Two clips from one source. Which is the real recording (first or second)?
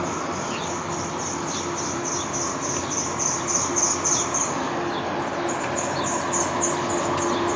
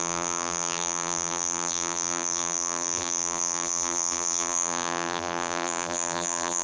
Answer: first